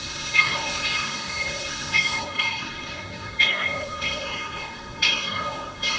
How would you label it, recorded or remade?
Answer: remade